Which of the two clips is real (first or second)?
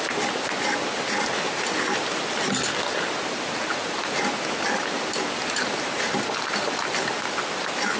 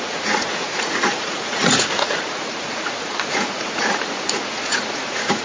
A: first